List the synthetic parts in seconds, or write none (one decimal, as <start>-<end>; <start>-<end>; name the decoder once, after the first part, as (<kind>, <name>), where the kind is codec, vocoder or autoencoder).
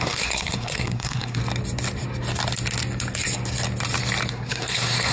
0.0-1.4 (codec, SNAC); 4.3-5.1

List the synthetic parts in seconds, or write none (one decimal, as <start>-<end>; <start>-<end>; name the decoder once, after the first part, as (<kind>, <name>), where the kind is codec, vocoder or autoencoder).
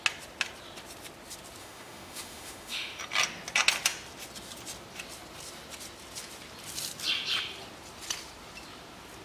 1.6-3.0 (autoencoder, DAC-VAE)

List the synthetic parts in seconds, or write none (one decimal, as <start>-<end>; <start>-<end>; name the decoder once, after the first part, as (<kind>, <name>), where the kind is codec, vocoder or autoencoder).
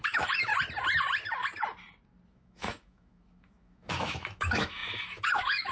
0.0-0.5 (autoencoder, DAC-VAE); 2.3-5.7